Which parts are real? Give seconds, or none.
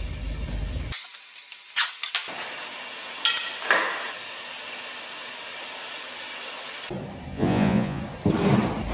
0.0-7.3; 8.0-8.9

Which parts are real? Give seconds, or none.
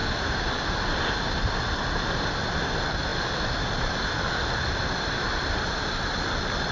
0.0-2.3; 3.1-4.9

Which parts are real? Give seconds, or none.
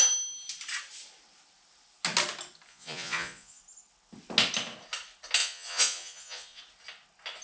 0.0-2.7; 3.6-5.4; 6.6-7.4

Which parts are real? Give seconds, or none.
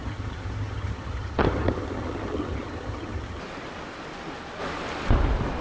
3.4-5.6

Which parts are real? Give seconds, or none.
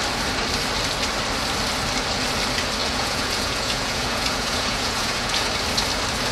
0.0-2.8; 5.5-6.3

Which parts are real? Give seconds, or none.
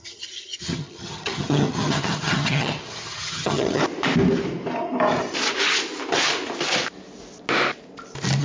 3.8-8.4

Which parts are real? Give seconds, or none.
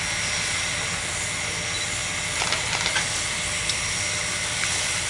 0.0-5.1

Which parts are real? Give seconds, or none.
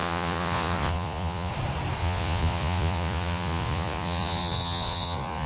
1.5-2.0